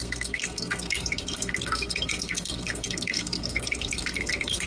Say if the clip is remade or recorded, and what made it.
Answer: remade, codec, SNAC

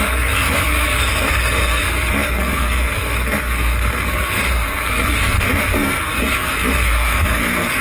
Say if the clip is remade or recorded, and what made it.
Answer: remade, codec, SNAC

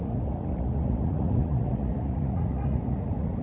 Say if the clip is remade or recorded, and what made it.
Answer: remade, vocoder, Vocos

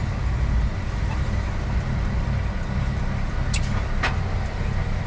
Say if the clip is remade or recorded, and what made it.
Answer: recorded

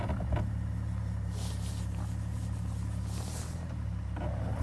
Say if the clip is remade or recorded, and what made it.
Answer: recorded